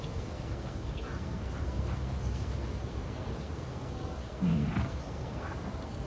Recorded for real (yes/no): no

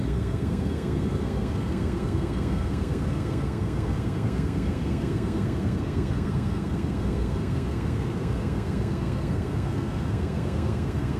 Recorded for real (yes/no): no